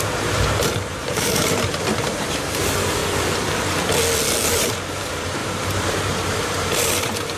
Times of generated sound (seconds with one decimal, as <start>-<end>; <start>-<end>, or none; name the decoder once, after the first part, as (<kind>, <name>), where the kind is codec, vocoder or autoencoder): 0.0-3.0 (vocoder, BigVGAN v2); 4.5-7.4